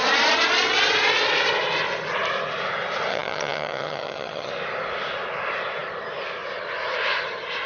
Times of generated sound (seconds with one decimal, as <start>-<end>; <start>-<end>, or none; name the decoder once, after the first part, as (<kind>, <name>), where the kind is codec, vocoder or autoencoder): 3.1-4.5 (vocoder, HiFi-GAN)